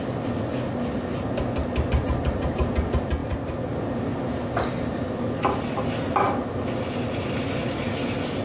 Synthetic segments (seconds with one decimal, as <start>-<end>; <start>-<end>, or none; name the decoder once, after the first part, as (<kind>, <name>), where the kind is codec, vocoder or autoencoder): none